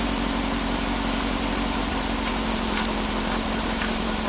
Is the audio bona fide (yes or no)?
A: no